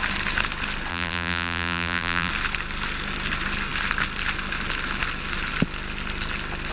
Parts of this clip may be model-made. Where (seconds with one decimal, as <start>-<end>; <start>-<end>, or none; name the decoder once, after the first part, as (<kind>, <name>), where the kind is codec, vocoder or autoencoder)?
0.9-2.3 (vocoder, BigVGAN v2)